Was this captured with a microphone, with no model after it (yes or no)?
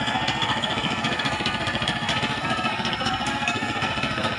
no